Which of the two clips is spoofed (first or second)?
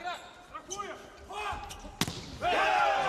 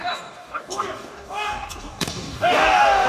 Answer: second